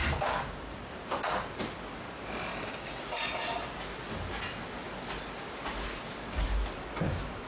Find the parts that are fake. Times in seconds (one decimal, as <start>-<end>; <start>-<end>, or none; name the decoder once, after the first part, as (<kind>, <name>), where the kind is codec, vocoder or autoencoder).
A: 2.5-3.0 (codec, DAC)